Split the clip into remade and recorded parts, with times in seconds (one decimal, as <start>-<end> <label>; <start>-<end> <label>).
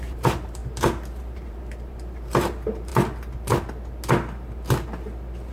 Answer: 0.0-0.6 remade; 0.6-1.2 recorded; 1.2-2.9 remade; 2.9-5.5 recorded